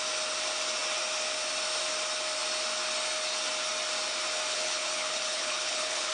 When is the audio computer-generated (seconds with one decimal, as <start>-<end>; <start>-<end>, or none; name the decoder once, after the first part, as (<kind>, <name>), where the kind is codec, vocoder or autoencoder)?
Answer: 4.5-6.1 (codec, HILCodec)

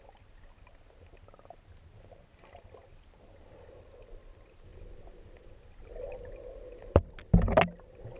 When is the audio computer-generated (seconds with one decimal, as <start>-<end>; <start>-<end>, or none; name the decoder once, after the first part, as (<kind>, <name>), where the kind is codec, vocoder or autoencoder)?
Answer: none